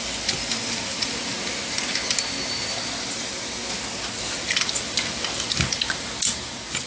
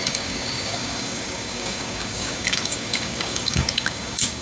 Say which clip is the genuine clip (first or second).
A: first